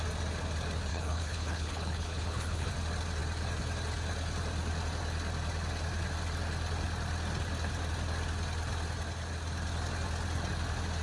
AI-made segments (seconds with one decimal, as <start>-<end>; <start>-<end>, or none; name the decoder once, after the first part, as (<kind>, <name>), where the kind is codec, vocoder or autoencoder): 0.9-2.7 (codec, HILCodec)